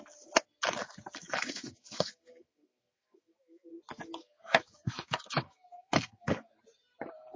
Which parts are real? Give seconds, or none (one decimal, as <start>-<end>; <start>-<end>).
0.0-1.2; 3.7-4.2; 6.6-7.4